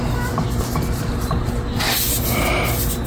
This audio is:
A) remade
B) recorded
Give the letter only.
B